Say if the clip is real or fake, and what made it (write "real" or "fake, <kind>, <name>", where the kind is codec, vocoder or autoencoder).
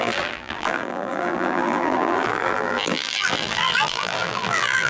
fake, vocoder, BigVGAN v2